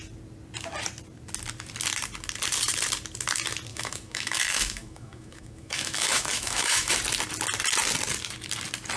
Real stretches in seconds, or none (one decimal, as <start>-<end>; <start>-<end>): 0.0-3.7; 7.0-9.0